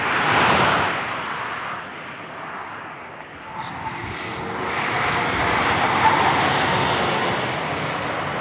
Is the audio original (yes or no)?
yes